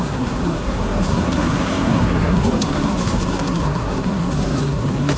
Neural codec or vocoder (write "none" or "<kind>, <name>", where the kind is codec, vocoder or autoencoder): codec, SNAC